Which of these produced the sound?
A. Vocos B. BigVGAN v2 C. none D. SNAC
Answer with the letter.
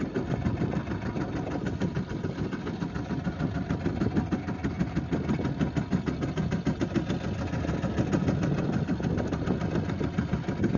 C